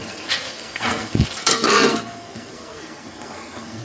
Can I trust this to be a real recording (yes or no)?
no